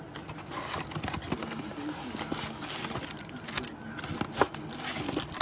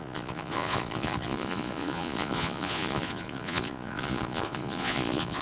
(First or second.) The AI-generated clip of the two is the second